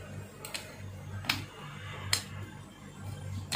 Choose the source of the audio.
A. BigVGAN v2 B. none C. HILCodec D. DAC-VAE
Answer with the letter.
B